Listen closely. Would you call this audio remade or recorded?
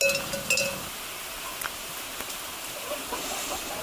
recorded